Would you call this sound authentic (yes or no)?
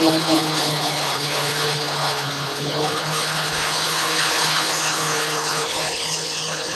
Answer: no